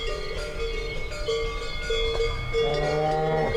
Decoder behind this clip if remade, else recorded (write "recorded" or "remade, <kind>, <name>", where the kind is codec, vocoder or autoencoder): recorded